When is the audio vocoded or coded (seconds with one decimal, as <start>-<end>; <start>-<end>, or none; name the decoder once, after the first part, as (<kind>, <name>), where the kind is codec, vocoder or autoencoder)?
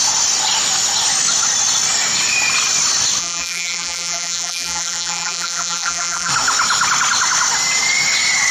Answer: 3.2-6.3 (vocoder, BigVGAN v2)